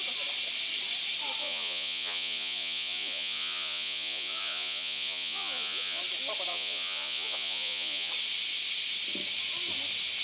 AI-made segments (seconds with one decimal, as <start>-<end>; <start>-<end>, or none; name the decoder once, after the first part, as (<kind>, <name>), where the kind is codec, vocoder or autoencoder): 1.4-6.0 (vocoder, Vocos); 6.5-8.1